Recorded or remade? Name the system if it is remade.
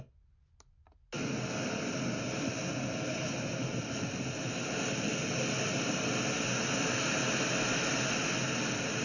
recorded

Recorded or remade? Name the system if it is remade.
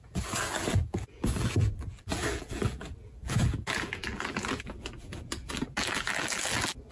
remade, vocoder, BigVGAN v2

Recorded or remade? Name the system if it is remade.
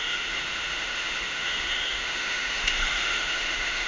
remade, autoencoder, DAC-VAE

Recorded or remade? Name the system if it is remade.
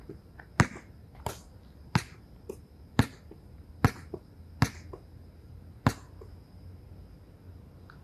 recorded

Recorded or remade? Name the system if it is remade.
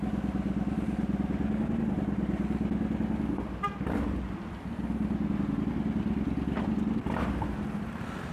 recorded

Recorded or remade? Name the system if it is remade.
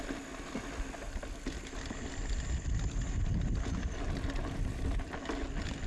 recorded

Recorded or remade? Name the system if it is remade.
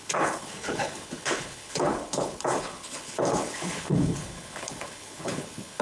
remade, codec, HILCodec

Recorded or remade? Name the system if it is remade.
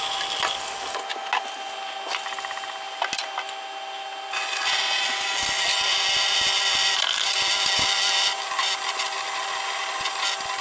recorded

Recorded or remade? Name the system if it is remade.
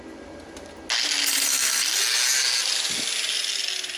recorded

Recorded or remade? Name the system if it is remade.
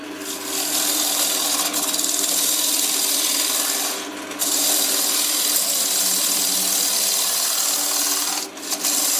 recorded